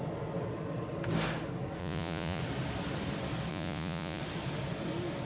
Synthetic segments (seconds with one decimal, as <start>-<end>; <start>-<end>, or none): 1.8-2.4; 3.5-4.2